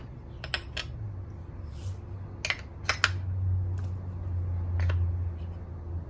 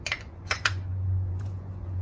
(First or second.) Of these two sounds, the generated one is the second